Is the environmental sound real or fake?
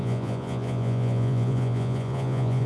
fake